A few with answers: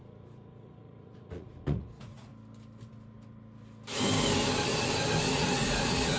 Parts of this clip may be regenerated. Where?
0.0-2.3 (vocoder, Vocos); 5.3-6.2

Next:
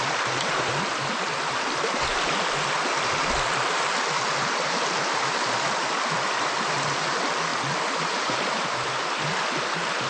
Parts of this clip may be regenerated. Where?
none

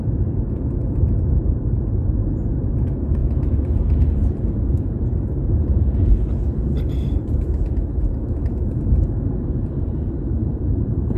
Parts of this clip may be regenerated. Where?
0.0-11.2 (vocoder, BigVGAN v2)

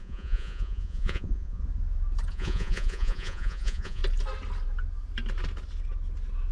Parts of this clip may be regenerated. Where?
0.0-1.6 (vocoder, Vocos); 2.3-4.0